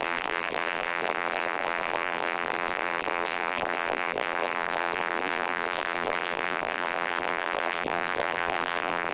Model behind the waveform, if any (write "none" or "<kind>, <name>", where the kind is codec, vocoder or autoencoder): vocoder, BigVGAN v2